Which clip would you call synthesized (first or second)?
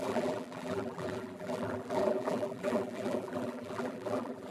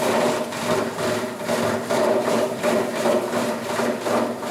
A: first